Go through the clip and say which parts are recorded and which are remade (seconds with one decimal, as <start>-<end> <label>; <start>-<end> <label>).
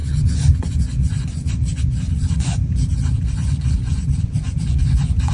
0.0-2.8 remade; 2.8-3.3 recorded; 3.3-5.3 remade